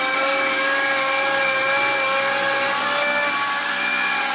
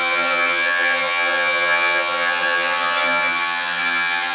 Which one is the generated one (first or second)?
second